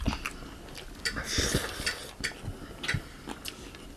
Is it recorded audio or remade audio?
recorded